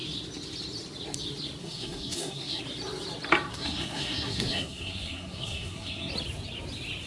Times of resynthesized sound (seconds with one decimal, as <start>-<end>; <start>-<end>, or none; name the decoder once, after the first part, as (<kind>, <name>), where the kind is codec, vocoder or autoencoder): 1.6-2.6 (codec, SNAC); 3.5-6.1